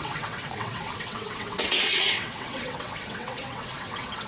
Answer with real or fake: fake